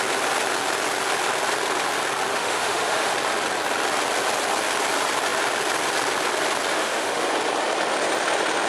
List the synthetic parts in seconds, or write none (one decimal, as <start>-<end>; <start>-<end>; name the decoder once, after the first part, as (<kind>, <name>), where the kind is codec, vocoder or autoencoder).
2.3-3.1 (autoencoder, DAC-VAE); 6.7-7.3